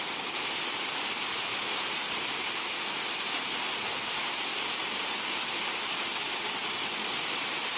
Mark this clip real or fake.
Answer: real